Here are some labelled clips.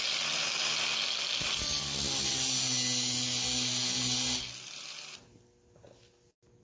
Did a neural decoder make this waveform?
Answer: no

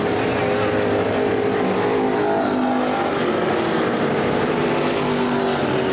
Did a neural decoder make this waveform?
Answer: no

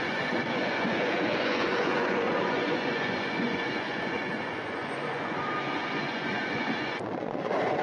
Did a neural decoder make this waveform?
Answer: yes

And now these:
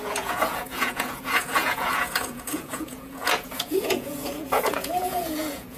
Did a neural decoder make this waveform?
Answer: yes